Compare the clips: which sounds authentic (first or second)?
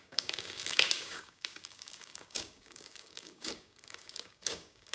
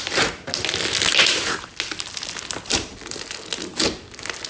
second